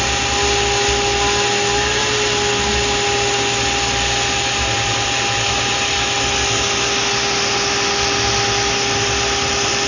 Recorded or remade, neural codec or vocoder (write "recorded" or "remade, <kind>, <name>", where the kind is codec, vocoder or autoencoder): recorded